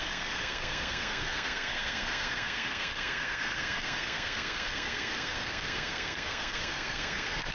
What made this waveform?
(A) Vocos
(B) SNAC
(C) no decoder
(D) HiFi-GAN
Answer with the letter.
B